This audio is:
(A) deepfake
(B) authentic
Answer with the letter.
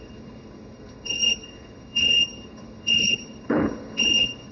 A